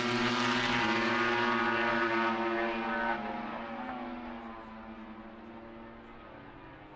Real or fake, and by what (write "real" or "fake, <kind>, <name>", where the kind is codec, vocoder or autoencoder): real